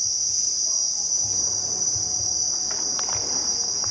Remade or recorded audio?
recorded